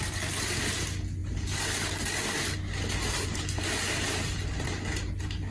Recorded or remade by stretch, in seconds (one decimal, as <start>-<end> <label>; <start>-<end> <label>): 0.0-5.5 recorded

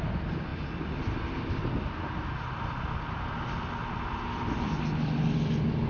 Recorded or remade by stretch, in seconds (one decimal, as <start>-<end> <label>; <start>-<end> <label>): 0.0-5.9 recorded

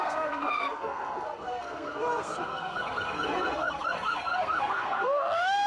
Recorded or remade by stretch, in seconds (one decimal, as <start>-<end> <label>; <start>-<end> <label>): 0.0-5.7 remade

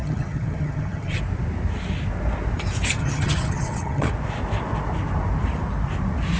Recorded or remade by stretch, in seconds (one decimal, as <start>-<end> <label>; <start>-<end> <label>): 0.0-1.2 remade; 1.2-3.0 recorded; 3.0-4.1 remade; 4.1-6.4 recorded

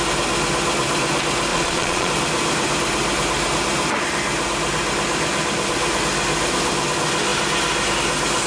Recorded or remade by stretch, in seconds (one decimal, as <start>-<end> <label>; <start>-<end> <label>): 0.0-1.5 recorded; 1.5-2.1 remade; 2.1-8.5 recorded

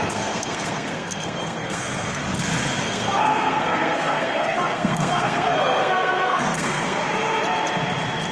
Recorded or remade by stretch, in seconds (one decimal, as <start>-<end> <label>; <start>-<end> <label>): 0.0-2.2 remade; 2.2-2.8 recorded; 2.8-7.0 remade; 7.0-8.3 recorded